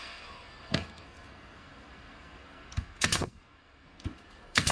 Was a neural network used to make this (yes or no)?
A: yes